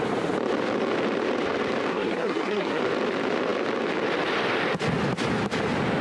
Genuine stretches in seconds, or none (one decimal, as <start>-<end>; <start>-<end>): 0.0-1.9; 2.8-6.0